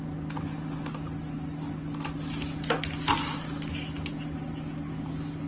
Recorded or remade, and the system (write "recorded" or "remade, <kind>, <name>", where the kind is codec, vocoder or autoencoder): recorded